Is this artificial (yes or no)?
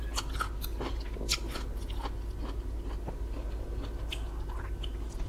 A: no